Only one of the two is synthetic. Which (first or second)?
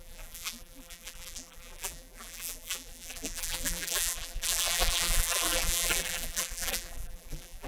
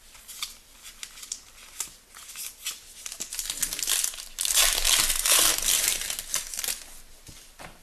first